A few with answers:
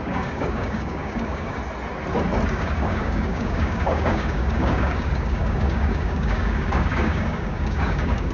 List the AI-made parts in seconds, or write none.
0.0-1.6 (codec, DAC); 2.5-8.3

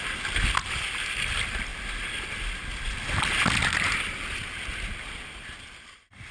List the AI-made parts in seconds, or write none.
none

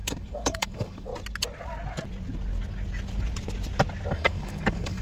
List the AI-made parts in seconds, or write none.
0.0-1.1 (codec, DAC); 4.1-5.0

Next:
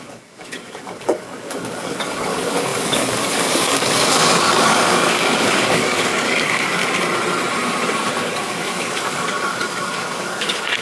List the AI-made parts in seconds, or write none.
0.0-6.8 (codec, DAC); 8.3-10.8

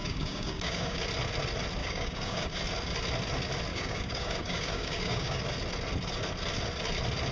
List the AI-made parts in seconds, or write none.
0.0-1.0 (codec, DAC); 1.8-2.6; 3.7-5.4

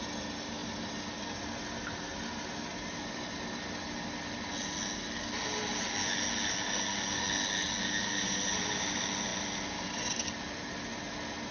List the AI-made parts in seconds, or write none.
none